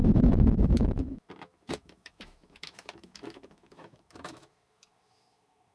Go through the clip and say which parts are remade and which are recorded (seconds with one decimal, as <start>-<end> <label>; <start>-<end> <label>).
0.0-5.7 remade